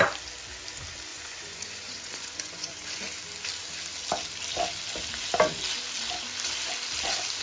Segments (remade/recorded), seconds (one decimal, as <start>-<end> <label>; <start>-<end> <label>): 0.0-1.1 recorded; 1.1-3.0 remade; 3.0-7.4 recorded